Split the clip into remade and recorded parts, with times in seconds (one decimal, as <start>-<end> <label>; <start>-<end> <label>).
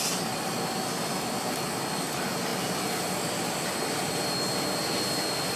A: 0.0-5.6 recorded